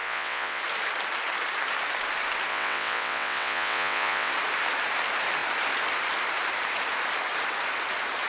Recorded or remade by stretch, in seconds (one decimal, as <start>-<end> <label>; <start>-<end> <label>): 0.0-0.6 remade; 0.6-2.5 recorded; 2.5-4.3 remade; 4.3-8.3 recorded

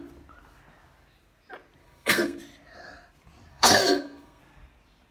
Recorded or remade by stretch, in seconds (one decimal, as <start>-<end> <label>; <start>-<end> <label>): 0.0-1.8 recorded; 1.8-2.4 remade; 2.4-3.5 recorded; 3.5-4.4 remade; 4.4-5.1 recorded

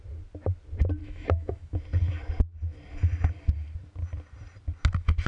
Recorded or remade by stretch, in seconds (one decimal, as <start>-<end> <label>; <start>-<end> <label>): 0.0-1.0 recorded; 1.0-1.8 remade; 1.8-5.3 recorded

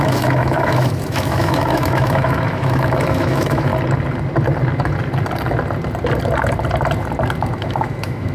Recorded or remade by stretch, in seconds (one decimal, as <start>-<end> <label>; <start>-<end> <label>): 0.0-3.7 remade; 3.7-7.6 recorded; 7.6-8.3 remade

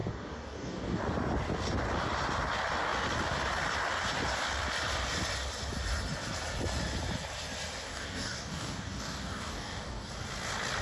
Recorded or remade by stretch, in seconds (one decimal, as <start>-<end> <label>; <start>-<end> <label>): 0.0-1.0 remade; 1.0-7.9 recorded; 7.9-10.1 remade; 10.1-10.8 recorded

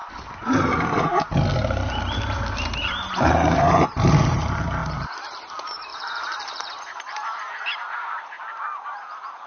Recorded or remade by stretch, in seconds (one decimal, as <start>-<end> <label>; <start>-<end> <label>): 0.0-2.4 recorded; 2.4-9.5 remade